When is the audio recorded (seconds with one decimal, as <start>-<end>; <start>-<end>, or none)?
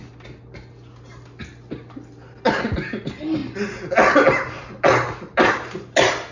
0.0-6.3